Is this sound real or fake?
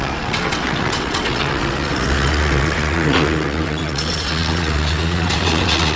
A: fake